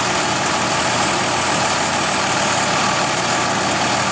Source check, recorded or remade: recorded